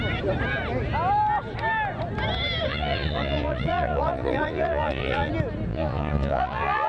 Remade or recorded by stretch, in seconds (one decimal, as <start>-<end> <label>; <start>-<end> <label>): 0.0-2.7 recorded; 2.7-5.3 remade; 5.3-5.7 recorded; 5.7-6.9 remade